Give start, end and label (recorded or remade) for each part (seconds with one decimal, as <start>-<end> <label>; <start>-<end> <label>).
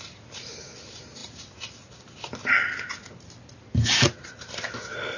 0.0-5.2 recorded